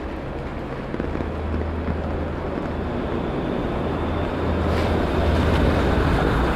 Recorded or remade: recorded